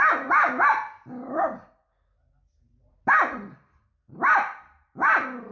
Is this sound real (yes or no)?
yes